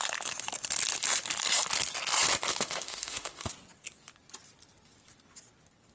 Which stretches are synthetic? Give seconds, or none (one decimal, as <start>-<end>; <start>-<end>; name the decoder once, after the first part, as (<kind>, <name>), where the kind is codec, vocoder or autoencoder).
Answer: 2.5-3.5 (autoencoder, DAC-VAE)